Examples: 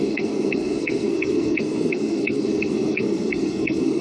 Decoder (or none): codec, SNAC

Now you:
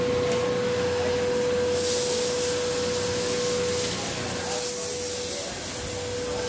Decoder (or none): none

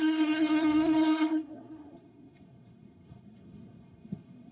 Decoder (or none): codec, SNAC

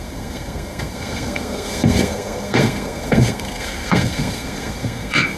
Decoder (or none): codec, SNAC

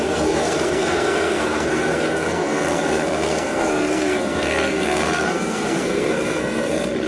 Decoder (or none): codec, SNAC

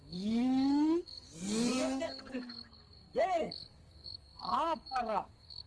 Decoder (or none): codec, SNAC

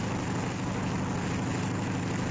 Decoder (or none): none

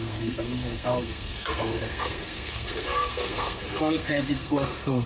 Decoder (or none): codec, SNAC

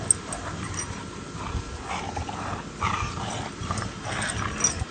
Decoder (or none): none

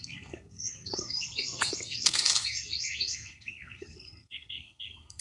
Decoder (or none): codec, SNAC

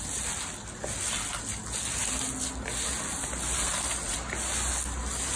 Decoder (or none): none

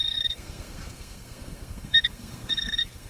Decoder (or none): codec, SNAC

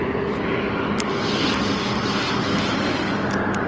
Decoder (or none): none